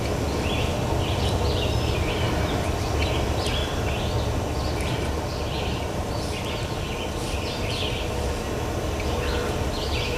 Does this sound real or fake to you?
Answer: real